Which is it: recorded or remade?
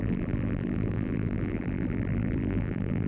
remade